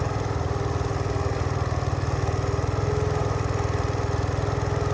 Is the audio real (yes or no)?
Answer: yes